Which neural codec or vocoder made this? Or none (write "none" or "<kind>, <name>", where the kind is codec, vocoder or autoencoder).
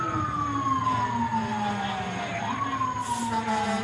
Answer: none